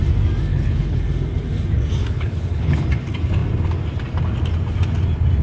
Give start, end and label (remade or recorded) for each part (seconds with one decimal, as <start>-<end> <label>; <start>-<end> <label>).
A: 0.0-0.5 recorded; 0.5-1.0 remade; 1.0-2.0 recorded; 2.0-2.8 remade; 2.8-5.4 recorded